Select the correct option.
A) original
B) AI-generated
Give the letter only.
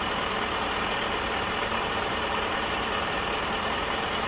B